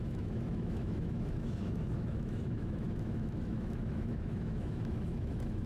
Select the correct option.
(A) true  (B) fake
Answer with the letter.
B